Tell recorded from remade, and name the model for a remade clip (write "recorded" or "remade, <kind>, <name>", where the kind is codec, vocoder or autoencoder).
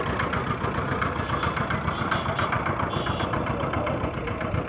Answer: recorded